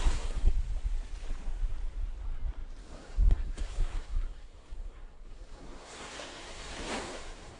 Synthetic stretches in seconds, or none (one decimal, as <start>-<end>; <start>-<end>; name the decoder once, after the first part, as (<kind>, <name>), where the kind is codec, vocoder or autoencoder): 0.0-0.5 (codec, SNAC); 2.8-7.6